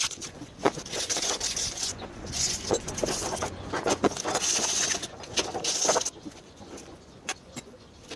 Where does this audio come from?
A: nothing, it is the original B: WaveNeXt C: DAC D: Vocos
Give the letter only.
D